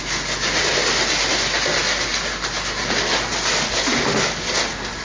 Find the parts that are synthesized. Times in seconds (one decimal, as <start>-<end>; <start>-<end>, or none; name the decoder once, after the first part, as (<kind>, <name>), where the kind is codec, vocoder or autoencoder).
none